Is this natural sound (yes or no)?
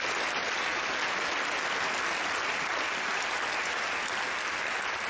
yes